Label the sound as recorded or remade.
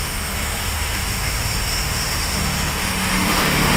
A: remade